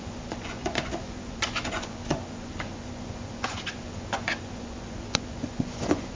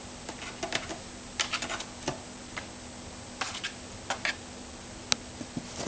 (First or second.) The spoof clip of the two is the first